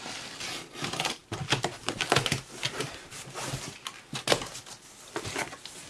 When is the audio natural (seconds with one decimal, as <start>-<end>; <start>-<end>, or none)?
0.0-5.9